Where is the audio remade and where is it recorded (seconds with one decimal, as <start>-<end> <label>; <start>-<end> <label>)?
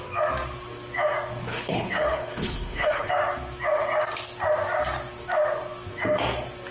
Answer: 0.0-1.5 recorded; 1.5-3.1 remade; 3.1-6.7 recorded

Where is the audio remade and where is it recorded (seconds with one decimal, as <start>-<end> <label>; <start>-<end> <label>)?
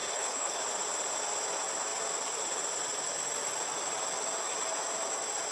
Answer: 0.0-0.6 remade; 0.6-5.5 recorded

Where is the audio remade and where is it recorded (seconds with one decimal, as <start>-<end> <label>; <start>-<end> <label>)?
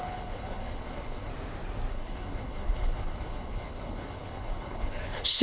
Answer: 0.0-1.3 remade; 1.3-1.9 recorded; 1.9-5.4 remade